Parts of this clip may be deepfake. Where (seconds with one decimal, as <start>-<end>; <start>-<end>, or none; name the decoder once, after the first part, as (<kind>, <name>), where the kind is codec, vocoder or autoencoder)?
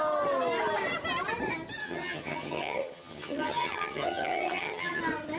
1.8-5.0 (vocoder, HiFi-GAN)